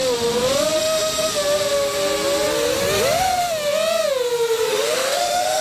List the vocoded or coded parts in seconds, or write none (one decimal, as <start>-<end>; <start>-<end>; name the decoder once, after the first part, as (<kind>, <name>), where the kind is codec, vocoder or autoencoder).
0.8-1.3 (autoencoder, DAC-VAE); 4.7-5.6